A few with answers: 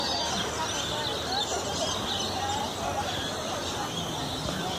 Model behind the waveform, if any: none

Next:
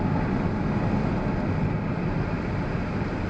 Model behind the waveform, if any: none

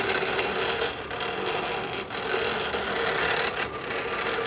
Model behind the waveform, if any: none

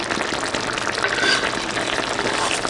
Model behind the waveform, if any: none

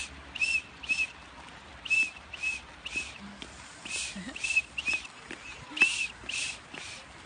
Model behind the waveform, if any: none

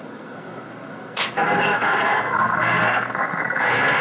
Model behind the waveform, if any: codec, SNAC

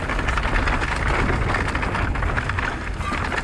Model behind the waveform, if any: none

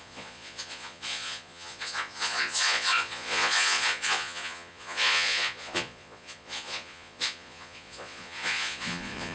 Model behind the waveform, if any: vocoder, Vocos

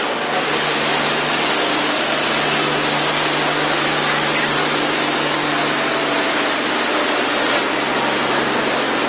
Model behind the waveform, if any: none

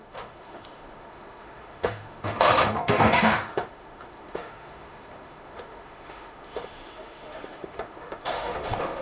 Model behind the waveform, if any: autoencoder, DAC-VAE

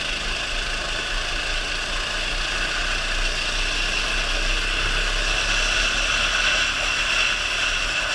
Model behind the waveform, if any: none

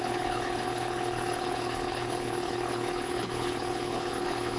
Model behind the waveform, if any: codec, HILCodec